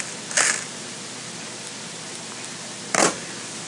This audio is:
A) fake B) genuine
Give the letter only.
B